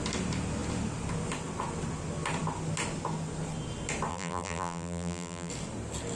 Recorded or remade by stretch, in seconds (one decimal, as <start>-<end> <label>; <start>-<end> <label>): 0.0-4.1 recorded; 4.1-5.5 remade; 5.5-6.2 recorded